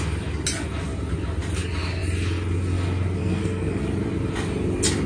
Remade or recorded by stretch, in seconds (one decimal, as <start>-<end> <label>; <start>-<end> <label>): 0.0-3.2 recorded; 3.2-3.8 remade; 3.8-5.1 recorded